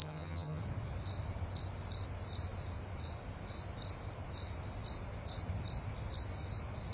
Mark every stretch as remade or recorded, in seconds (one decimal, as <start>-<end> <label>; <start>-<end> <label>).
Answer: 0.0-0.6 remade; 0.6-6.9 recorded